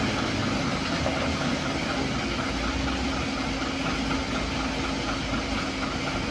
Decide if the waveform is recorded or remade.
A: recorded